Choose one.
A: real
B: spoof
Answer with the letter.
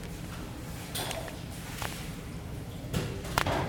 B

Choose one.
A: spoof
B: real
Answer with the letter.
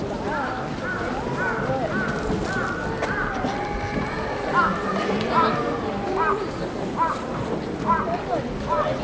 B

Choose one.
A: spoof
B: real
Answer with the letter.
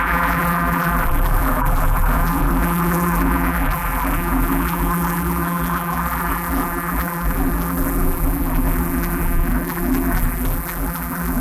A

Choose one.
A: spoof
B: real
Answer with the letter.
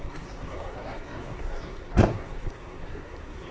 A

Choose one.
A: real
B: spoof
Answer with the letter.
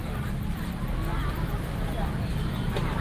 B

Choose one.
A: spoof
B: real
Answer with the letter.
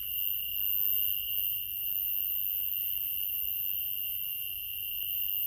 B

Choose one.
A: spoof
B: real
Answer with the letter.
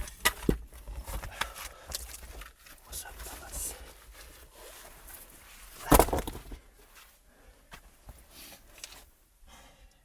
B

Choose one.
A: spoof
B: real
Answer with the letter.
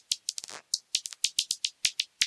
B